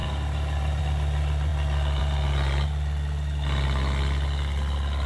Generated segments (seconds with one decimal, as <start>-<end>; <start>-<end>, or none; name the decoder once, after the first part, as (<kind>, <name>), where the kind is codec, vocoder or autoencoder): 0.0-0.8 (vocoder, BigVGAN v2)